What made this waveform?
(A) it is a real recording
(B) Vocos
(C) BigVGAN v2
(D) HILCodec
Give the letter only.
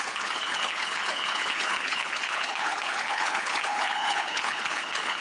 D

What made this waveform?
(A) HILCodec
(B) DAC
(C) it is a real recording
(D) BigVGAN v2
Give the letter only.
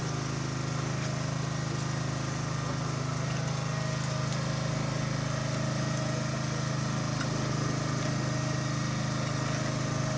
C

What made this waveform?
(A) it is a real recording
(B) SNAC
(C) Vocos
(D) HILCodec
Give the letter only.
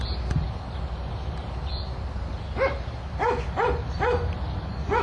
A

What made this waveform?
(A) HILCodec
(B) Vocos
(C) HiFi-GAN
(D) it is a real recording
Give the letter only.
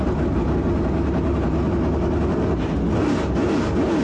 D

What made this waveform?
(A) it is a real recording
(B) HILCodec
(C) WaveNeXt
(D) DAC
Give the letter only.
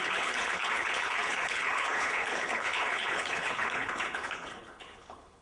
B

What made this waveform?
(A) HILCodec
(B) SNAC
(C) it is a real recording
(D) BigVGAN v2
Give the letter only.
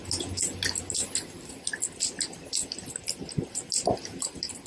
C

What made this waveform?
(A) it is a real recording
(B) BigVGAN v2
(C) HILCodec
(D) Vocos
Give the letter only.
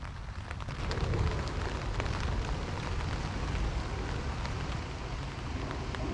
A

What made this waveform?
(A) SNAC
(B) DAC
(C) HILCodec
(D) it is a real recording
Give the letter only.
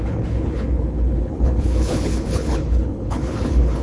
C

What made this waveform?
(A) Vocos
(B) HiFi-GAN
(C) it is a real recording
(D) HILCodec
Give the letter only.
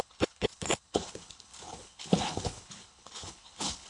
D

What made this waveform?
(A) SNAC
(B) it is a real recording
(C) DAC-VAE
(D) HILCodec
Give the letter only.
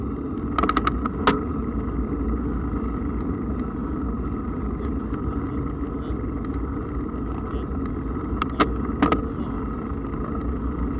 B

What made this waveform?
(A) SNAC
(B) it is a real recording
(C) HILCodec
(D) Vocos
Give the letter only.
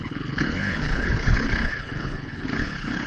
C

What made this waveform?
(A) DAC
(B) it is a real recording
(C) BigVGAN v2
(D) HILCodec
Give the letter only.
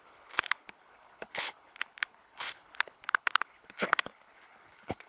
D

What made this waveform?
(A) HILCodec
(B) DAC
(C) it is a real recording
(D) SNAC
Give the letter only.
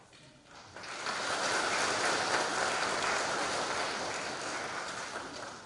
C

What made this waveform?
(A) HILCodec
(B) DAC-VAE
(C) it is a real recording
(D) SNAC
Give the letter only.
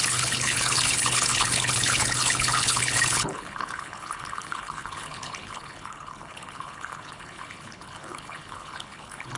A